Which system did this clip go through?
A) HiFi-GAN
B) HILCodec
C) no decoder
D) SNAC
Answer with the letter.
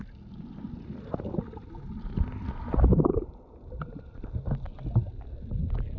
C